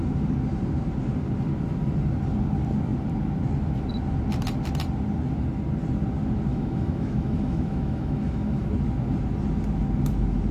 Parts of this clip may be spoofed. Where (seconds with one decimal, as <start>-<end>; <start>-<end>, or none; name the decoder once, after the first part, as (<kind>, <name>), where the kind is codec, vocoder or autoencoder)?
6.5-8.7 (autoencoder, DAC-VAE)